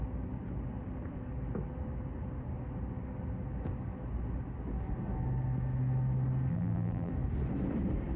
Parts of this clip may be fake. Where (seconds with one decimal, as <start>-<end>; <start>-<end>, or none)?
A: 6.5-7.1